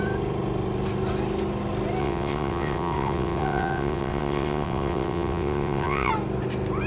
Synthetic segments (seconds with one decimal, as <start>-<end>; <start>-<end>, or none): 2.0-6.1